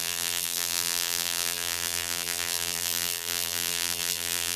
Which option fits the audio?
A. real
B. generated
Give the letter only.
B